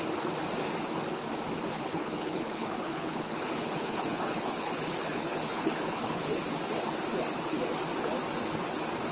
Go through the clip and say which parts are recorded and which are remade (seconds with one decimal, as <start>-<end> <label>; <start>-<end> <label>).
0.0-1.7 recorded; 1.7-6.4 remade; 6.4-9.1 recorded